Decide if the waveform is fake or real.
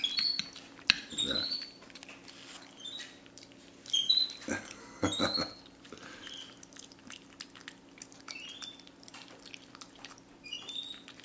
real